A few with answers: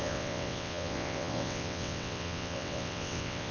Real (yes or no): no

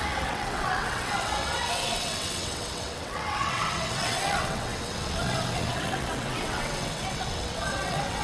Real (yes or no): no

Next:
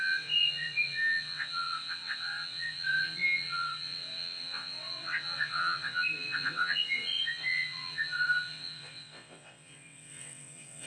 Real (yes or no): no